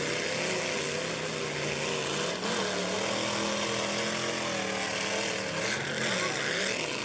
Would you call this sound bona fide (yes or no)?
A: yes